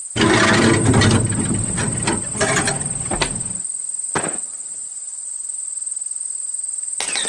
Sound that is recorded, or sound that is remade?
recorded